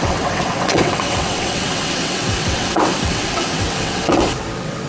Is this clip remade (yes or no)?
yes